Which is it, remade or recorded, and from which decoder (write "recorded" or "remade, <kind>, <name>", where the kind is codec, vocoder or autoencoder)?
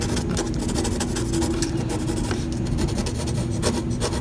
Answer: recorded